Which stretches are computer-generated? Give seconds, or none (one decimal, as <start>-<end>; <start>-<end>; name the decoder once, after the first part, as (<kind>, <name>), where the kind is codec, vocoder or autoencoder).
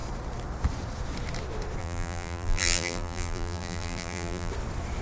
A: 1.8-4.5 (vocoder, BigVGAN v2)